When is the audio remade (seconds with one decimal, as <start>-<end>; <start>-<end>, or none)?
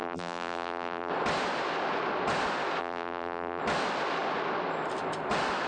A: 0.0-1.1; 2.8-3.6